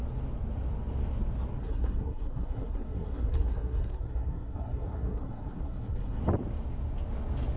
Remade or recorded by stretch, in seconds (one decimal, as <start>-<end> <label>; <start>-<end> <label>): 0.0-1.6 recorded; 1.6-6.2 remade; 6.2-7.6 recorded